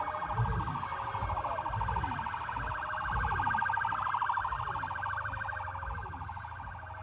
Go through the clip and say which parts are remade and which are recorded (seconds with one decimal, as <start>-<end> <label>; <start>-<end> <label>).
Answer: 0.0-7.0 recorded